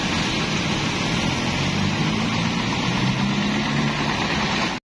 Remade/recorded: recorded